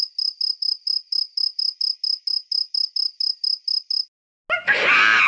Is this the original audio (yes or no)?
yes